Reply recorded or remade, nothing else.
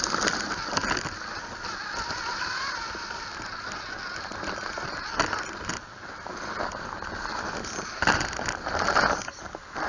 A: recorded